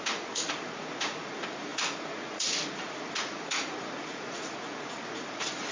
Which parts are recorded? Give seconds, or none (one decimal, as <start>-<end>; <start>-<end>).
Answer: none